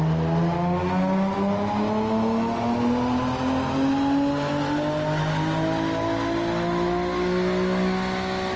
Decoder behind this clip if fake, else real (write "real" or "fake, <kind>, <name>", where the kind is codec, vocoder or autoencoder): real